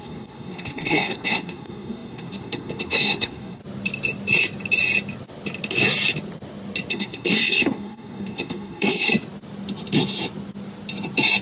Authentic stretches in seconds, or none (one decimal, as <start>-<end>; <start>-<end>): 3.6-6.9; 9.1-11.4